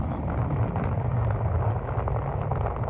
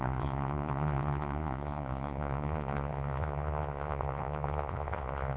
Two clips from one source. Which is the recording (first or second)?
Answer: first